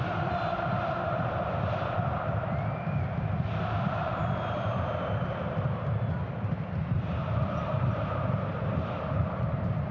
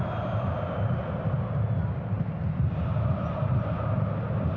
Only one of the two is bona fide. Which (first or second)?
second